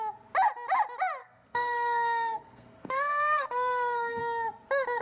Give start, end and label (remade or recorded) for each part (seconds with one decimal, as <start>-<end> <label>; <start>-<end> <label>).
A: 0.0-1.2 recorded; 1.2-4.2 remade; 4.2-5.0 recorded